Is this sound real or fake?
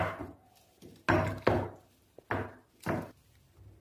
real